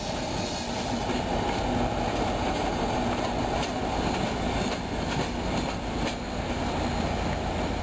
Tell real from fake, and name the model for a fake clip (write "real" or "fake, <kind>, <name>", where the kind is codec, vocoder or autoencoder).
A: real